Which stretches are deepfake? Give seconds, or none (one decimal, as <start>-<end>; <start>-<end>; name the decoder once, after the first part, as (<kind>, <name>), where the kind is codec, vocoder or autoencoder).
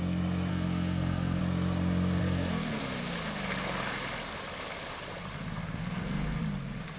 0.5-1.4 (codec, SNAC); 2.2-2.8; 5.8-6.4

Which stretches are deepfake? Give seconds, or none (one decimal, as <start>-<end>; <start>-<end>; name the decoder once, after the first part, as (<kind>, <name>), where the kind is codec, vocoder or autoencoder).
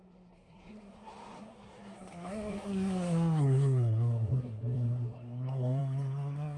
0.0-6.6 (codec, SNAC)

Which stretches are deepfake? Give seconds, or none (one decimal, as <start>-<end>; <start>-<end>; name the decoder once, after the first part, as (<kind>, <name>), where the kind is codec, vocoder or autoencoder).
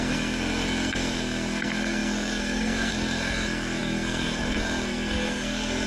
0.0-5.9 (codec, SNAC)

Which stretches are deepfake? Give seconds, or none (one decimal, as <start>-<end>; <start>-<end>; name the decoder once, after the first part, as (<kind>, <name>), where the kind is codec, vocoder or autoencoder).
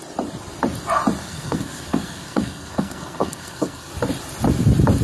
1.2-3.9 (codec, SNAC)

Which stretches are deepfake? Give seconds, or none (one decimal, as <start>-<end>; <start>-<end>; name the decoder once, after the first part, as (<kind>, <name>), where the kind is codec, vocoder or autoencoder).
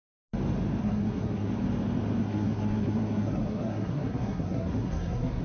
0.8-1.5 (codec, SNAC); 2.2-5.4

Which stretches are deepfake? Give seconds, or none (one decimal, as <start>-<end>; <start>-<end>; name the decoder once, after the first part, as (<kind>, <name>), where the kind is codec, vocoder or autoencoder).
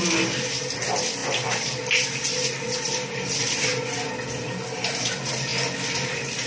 none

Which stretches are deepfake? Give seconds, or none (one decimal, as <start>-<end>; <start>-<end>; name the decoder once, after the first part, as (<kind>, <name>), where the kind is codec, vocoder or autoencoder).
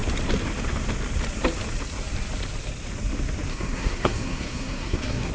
3.5-5.3 (codec, SNAC)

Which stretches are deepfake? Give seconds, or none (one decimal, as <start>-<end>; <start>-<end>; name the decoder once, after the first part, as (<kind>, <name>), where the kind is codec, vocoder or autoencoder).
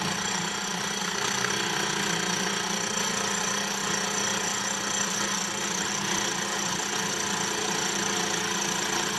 1.0-1.5 (codec, SNAC)